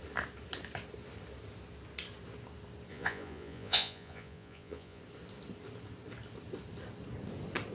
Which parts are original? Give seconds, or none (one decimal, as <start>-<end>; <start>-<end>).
0.0-2.9; 5.0-7.7